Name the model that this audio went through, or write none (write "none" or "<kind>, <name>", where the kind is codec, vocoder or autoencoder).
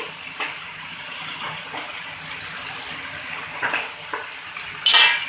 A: none